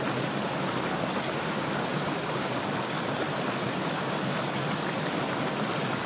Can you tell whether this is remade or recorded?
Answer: recorded